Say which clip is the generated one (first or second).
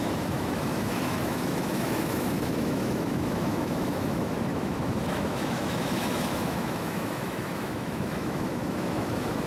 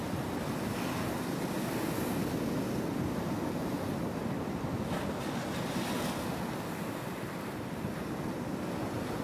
first